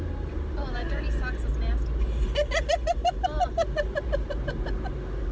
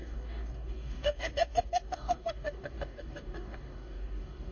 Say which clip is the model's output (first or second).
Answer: second